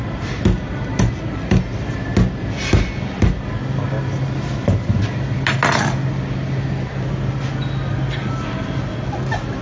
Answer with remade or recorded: recorded